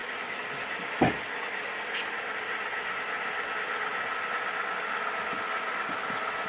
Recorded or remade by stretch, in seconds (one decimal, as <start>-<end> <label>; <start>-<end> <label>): 0.0-6.5 recorded